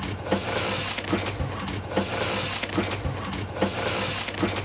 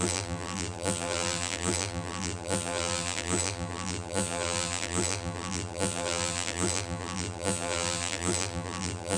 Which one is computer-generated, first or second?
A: second